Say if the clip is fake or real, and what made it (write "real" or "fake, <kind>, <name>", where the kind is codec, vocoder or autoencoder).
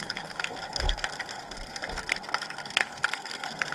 fake, codec, SNAC